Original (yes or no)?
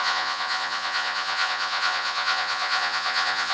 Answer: no